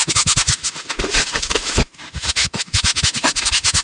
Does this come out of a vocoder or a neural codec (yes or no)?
yes